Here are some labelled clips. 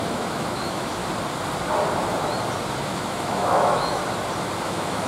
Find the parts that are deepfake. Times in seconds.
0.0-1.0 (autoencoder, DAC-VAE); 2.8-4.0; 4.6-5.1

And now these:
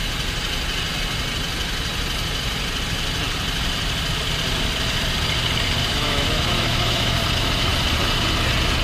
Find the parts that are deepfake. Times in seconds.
5.8-7.2 (autoencoder, DAC-VAE)